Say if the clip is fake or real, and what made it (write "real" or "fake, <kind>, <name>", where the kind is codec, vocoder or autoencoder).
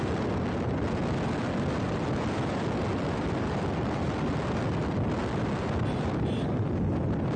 real